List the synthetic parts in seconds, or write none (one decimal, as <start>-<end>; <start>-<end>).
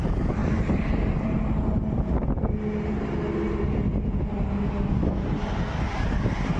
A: none